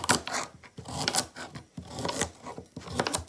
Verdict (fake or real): real